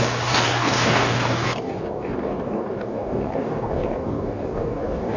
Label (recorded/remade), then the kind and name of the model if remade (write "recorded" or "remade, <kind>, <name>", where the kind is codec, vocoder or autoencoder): remade, codec, DAC